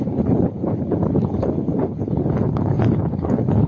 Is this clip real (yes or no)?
no